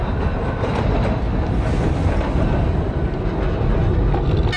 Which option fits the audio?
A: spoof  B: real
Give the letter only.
B